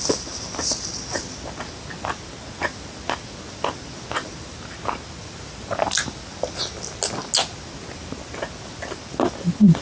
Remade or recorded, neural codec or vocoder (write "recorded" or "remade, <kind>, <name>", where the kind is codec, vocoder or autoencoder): recorded